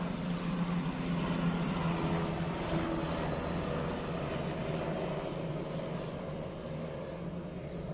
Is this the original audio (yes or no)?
yes